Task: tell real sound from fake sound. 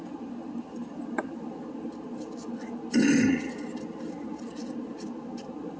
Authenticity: real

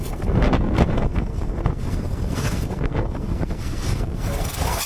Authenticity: fake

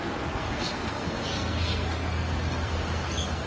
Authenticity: fake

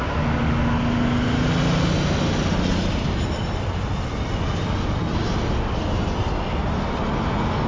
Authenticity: real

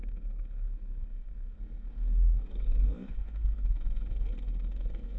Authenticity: fake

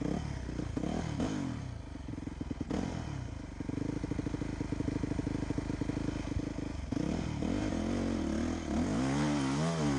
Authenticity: real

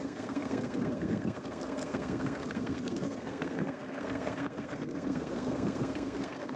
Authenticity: fake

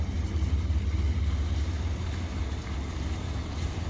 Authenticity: real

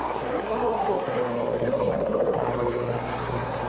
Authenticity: fake